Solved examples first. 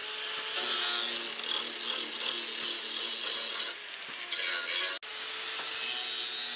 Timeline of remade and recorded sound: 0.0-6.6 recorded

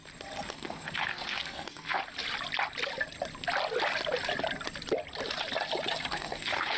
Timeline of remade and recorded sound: 0.0-0.5 recorded; 0.5-2.0 remade; 2.0-6.1 recorded; 6.1-6.8 remade

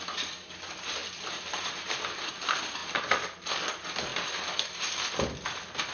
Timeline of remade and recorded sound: 0.0-5.9 recorded

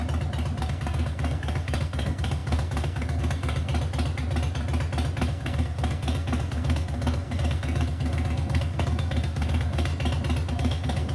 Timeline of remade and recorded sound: 0.0-0.6 recorded; 0.6-3.7 remade; 3.7-5.2 recorded; 5.2-9.9 remade; 9.9-10.5 recorded; 10.5-11.1 remade